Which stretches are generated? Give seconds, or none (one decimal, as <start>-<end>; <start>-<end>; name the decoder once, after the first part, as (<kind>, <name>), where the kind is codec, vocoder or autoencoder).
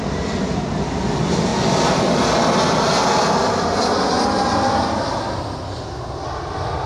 none